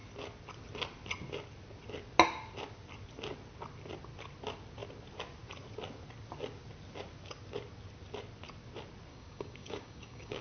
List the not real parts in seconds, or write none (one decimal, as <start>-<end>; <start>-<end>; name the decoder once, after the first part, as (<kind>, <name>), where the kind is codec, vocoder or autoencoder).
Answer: 9.1-10.4 (codec, DAC)